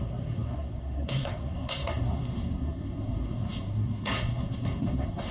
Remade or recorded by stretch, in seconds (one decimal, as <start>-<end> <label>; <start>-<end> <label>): 0.0-5.3 remade

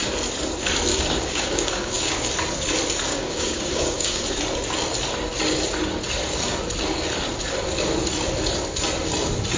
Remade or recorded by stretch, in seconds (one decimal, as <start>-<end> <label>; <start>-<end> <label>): 0.0-0.9 recorded; 0.9-2.3 remade; 2.3-3.1 recorded; 3.1-4.2 remade; 4.2-9.6 recorded

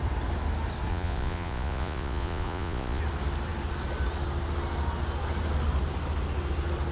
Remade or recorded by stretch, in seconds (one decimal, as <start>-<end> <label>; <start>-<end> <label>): 0.0-0.9 recorded; 0.9-3.0 remade; 3.0-6.9 recorded

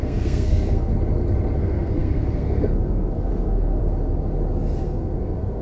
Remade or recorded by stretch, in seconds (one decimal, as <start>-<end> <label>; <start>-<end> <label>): 0.0-0.9 remade; 0.9-1.6 recorded; 1.6-3.8 remade; 3.8-4.8 recorded; 4.8-5.6 remade

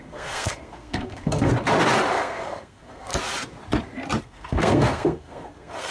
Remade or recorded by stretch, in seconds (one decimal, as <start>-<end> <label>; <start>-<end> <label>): 0.0-1.5 remade; 1.5-2.1 recorded; 2.1-3.1 remade; 3.1-4.2 recorded; 4.2-5.9 remade

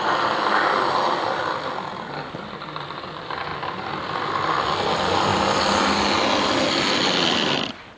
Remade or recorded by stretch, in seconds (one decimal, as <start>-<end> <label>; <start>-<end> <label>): 0.0-8.0 recorded

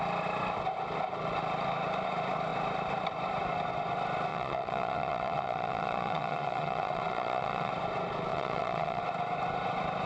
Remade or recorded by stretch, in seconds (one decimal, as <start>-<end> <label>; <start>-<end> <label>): 0.0-4.3 recorded; 4.3-7.7 remade; 7.7-8.3 recorded; 8.3-9.0 remade; 9.0-10.1 recorded